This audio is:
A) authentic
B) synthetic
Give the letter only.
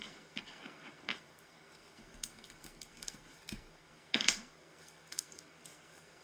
B